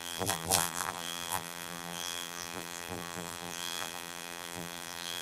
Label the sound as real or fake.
fake